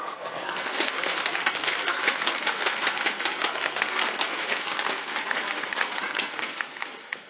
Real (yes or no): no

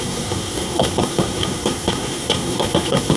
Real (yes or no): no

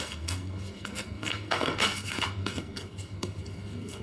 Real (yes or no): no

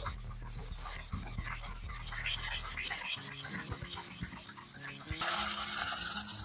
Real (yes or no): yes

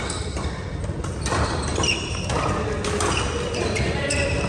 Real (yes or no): yes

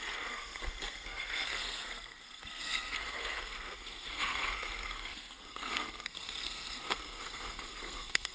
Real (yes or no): no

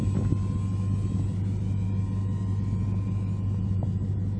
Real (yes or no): yes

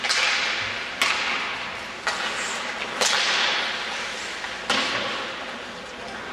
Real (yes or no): yes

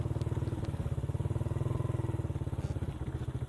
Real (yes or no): yes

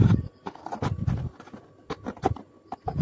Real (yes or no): yes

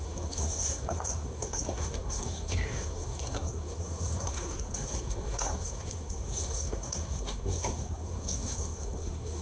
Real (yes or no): no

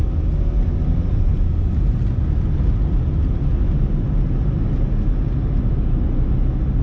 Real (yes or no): yes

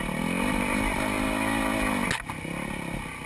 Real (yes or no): yes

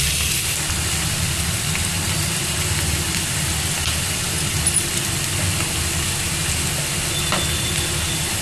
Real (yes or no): yes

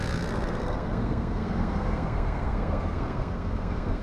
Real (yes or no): no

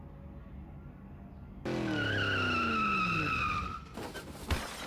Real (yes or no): yes